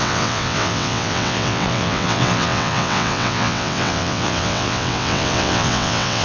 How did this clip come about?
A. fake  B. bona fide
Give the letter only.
A